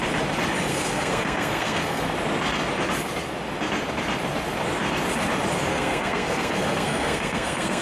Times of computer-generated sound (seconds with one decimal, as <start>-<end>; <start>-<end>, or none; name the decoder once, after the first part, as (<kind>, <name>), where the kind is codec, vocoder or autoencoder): 0.7-2.0 (codec, SNAC); 5.7-7.8